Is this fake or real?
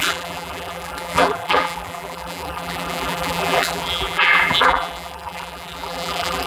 fake